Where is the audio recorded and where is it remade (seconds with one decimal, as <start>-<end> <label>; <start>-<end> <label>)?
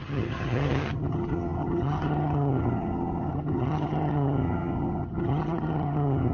0.0-6.3 remade